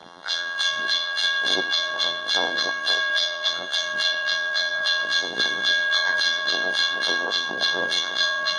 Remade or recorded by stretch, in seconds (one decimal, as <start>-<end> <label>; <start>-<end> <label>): 0.0-8.6 remade